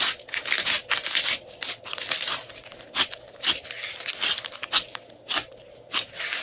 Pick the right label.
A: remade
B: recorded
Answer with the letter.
B